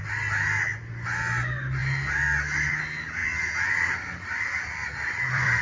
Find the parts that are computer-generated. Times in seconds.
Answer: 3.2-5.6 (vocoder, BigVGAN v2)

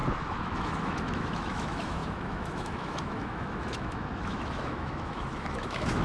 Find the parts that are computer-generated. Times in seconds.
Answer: 0.0-6.0 (autoencoder, DAC-VAE)

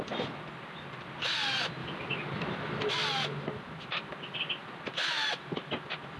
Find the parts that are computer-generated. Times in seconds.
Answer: 1.8-2.9 (vocoder, BigVGAN v2)

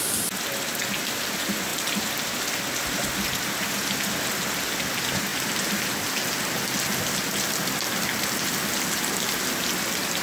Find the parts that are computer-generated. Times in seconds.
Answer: none

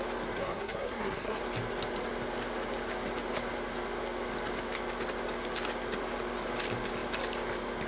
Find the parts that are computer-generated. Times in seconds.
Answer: 0.4-1.4 (codec, SNAC)

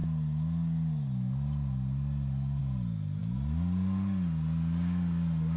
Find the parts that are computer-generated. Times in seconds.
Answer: none

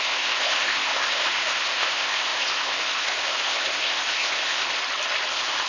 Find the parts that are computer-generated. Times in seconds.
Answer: 0.0-4.8 (codec, ZipCodec); 5.3-5.7

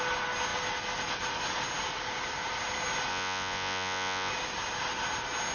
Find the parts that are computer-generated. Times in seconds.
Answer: 3.1-4.3 (vocoder, Vocos)